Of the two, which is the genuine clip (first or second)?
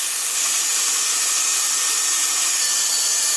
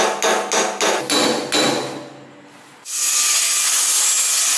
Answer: second